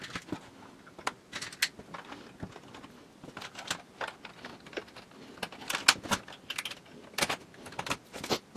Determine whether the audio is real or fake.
real